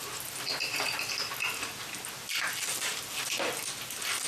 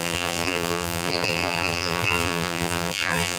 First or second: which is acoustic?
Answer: first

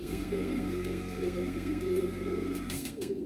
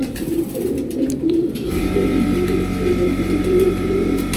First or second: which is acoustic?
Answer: second